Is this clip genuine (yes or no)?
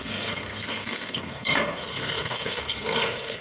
no